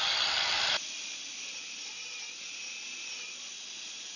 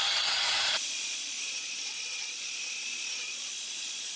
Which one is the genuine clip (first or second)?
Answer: first